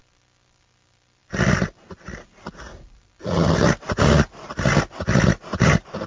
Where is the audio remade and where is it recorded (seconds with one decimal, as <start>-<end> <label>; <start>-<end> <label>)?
0.0-6.1 recorded